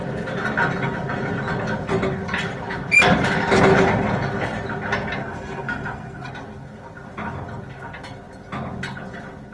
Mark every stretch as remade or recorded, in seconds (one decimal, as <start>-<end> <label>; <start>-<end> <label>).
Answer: 0.0-5.2 recorded; 5.2-6.3 remade; 6.3-9.5 recorded